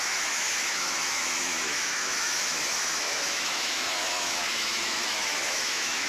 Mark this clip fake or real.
fake